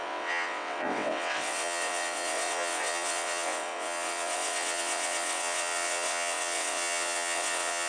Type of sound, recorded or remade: remade